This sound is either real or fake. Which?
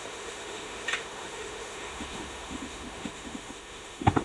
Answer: fake